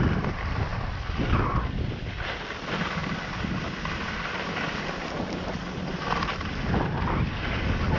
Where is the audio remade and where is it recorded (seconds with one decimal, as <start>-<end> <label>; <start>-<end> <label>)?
0.0-8.0 recorded

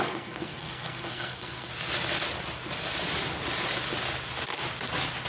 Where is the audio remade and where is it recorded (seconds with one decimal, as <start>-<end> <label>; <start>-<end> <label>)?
0.0-1.7 remade; 1.7-5.3 recorded

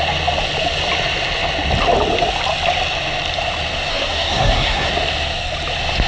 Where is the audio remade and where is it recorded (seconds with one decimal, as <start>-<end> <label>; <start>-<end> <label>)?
0.0-3.9 recorded; 3.9-4.9 remade; 4.9-6.1 recorded